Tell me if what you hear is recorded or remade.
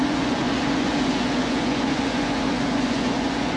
remade